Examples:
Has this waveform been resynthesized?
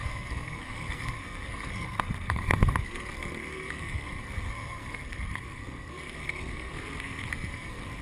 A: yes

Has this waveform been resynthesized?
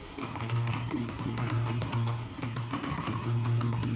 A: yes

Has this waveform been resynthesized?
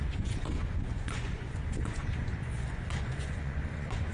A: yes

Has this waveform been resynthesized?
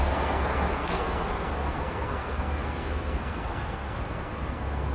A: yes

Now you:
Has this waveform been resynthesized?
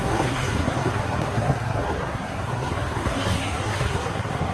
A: yes